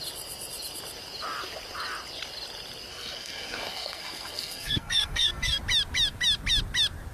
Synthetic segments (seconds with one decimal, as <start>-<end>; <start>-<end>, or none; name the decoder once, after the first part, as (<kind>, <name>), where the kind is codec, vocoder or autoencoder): 2.9-5.6 (codec, SNAC)